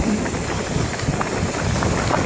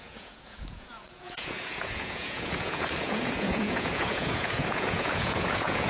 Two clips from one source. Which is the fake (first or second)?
second